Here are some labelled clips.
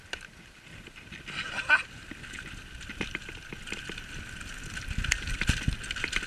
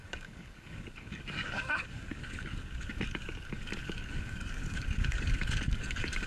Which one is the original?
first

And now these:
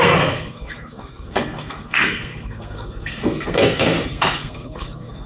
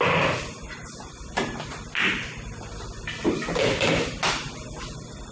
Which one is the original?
second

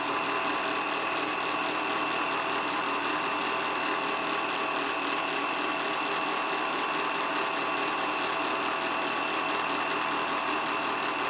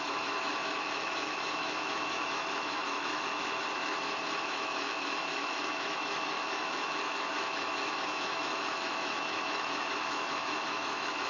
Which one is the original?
first